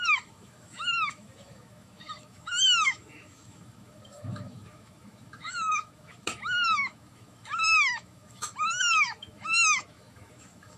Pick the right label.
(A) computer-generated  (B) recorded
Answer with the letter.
A